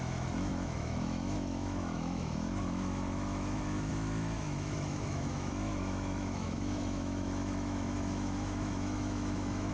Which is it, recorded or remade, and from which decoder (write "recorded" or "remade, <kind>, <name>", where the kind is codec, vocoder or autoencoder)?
remade, autoencoder, DAC-VAE